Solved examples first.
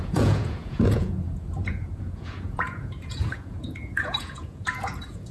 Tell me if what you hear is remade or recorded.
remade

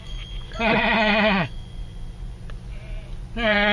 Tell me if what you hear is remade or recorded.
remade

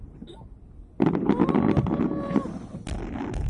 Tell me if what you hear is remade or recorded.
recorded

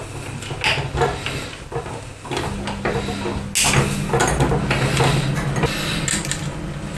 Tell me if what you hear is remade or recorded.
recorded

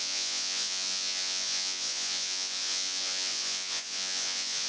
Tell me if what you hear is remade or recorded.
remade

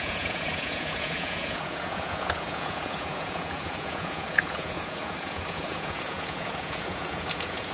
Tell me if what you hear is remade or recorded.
remade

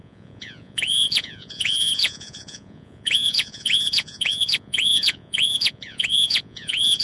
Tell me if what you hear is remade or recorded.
remade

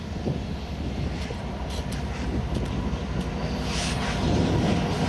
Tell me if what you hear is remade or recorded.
recorded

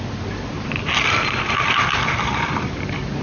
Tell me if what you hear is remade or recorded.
recorded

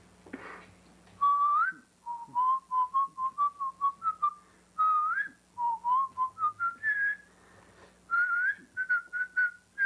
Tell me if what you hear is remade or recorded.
recorded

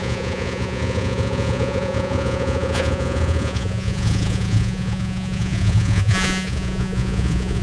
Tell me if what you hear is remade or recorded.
remade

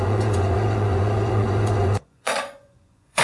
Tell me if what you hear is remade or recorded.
remade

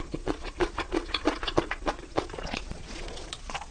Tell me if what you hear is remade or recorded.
remade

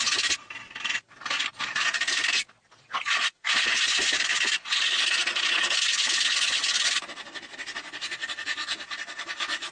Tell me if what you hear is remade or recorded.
recorded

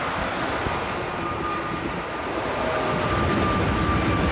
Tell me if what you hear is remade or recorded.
recorded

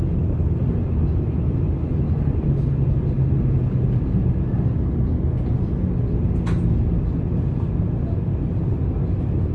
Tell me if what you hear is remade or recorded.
recorded